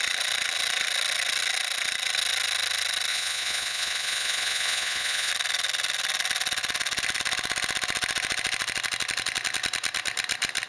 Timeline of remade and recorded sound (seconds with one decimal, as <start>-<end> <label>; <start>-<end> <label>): 0.0-3.1 recorded; 3.1-5.3 remade; 5.3-10.7 recorded